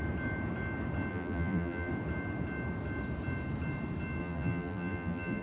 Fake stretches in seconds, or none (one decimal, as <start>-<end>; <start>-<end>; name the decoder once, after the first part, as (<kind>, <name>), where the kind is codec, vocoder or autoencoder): 1.1-1.9 (vocoder, BigVGAN v2); 4.2-5.4